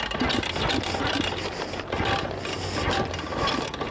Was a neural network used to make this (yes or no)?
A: no